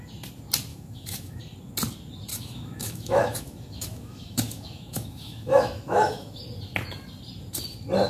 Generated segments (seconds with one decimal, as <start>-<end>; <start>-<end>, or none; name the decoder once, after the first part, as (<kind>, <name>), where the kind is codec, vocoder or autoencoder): 0.7-1.4 (autoencoder, DAC-VAE); 2.3-6.4